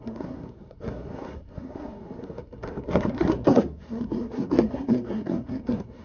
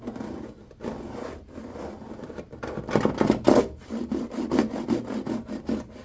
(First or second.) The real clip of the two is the second